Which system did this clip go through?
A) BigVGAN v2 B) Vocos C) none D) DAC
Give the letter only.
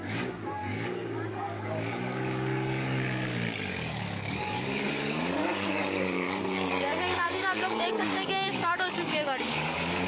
D